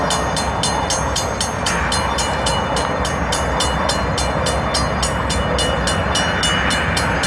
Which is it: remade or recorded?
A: recorded